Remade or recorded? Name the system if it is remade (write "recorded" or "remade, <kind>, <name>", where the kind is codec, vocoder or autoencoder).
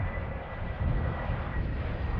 recorded